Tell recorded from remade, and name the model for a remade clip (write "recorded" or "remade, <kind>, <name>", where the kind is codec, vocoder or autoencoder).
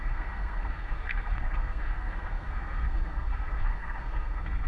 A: remade, codec, SNAC